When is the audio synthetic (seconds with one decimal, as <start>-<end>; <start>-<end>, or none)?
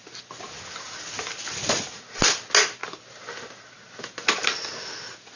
none